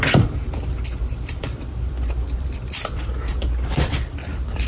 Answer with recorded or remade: remade